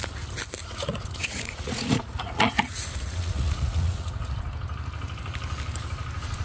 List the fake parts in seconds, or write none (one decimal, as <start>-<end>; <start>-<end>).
0.6-4.4